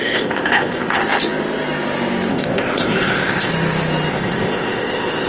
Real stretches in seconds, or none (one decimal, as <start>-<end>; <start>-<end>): 1.0-2.3; 3.5-4.1